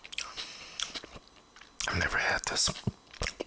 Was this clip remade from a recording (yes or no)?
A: no